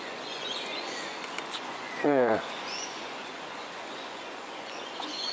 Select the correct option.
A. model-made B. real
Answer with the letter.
A